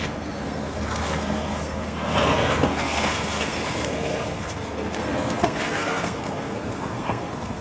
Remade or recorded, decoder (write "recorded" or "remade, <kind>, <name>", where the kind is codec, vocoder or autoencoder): remade, codec, SNAC